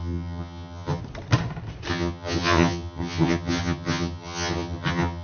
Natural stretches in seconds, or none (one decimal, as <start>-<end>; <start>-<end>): 1.0-1.9